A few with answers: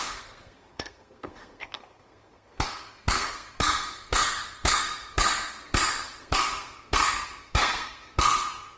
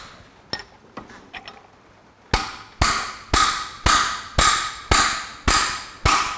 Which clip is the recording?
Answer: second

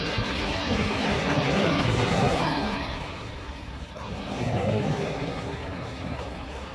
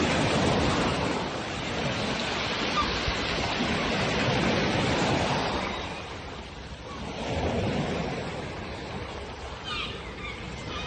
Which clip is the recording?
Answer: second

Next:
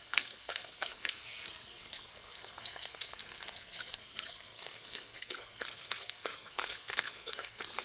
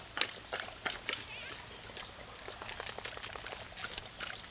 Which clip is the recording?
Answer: second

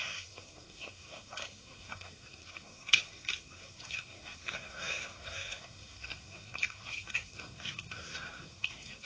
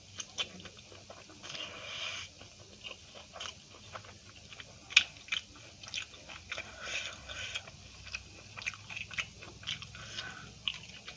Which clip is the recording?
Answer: second